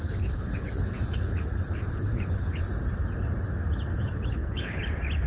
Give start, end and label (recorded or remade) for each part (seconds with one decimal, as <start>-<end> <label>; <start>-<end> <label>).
0.0-2.6 remade; 2.6-3.9 recorded; 3.9-4.8 remade; 4.8-5.3 recorded